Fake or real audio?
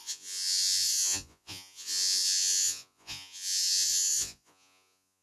fake